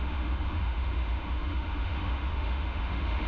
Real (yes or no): no